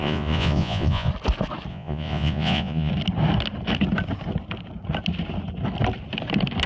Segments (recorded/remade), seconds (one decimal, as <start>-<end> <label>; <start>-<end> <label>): 0.0-1.1 remade; 1.1-1.7 recorded; 1.7-2.9 remade; 2.9-6.7 recorded